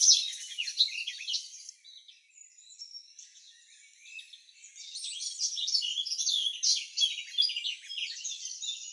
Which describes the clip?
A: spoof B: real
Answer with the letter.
B